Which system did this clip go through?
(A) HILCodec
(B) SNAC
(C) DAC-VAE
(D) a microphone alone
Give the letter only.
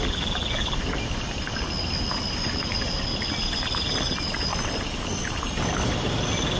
D